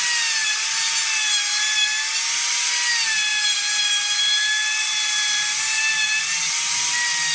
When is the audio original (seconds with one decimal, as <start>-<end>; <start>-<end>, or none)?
0.0-7.3